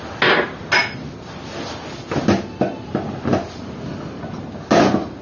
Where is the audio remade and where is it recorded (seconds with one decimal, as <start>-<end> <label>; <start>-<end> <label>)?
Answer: 0.0-5.2 recorded